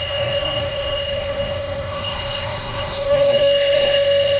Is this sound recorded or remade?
remade